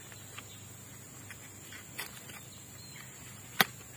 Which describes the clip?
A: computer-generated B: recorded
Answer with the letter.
B